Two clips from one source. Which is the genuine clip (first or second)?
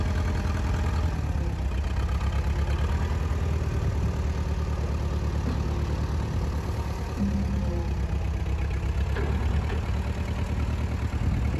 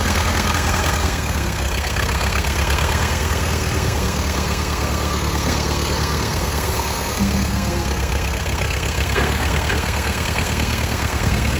first